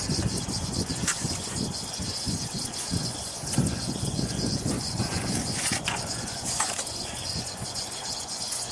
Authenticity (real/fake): fake